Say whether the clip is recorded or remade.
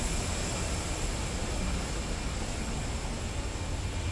recorded